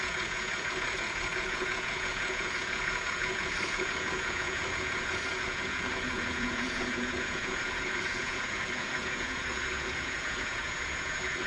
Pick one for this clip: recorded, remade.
remade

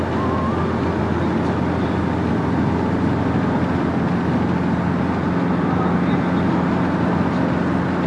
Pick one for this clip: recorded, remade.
recorded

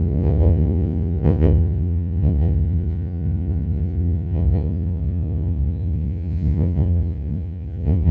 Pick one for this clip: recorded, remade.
remade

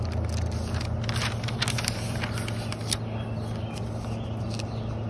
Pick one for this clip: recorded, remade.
recorded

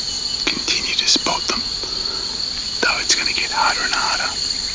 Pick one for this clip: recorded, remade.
recorded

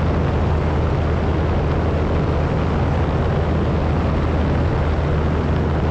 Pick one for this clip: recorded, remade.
recorded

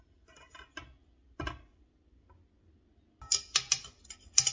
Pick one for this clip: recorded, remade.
recorded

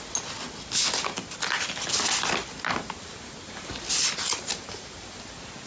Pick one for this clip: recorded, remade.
recorded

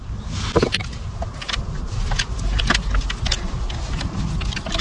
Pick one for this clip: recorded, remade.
recorded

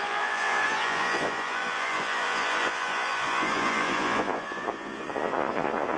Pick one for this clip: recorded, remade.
remade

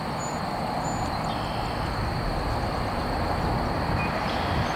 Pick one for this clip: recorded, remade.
recorded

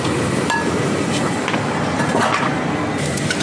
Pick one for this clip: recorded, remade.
recorded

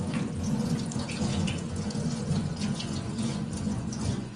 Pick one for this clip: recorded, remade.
remade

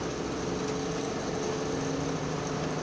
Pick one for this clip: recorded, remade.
recorded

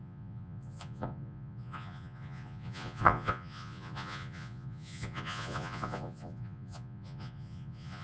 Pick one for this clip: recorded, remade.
remade